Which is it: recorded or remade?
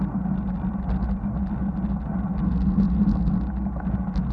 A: recorded